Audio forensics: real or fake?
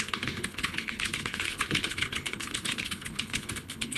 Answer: fake